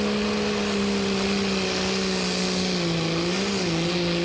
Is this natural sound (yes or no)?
yes